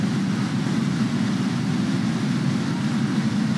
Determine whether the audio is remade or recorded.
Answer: recorded